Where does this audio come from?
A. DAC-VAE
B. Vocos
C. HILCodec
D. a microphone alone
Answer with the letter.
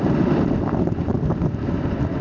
D